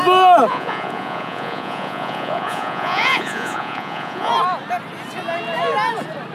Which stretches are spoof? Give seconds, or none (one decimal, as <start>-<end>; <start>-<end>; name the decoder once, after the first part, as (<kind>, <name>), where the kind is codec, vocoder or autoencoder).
0.5-4.3 (vocoder, Vocos)